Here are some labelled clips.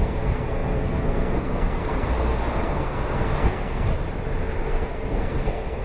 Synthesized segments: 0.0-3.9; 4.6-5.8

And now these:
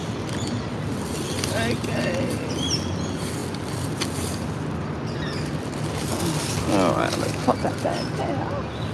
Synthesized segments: none

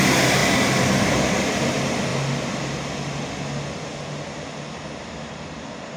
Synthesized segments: none

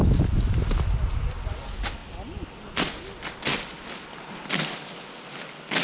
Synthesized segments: none